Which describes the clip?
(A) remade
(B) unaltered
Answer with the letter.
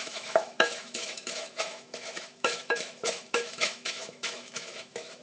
A